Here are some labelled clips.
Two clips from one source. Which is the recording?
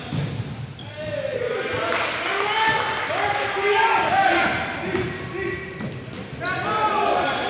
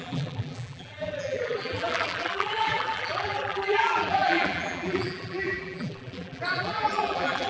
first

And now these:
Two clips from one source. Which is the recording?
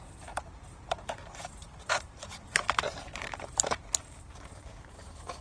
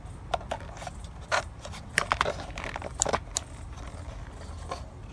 second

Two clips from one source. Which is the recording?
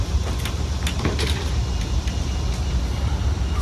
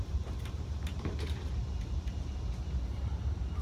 first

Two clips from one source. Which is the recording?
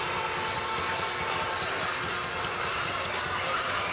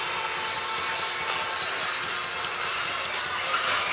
second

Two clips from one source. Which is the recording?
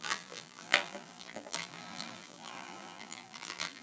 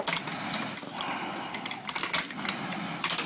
second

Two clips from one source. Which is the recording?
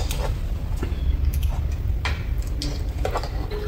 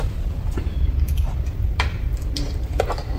first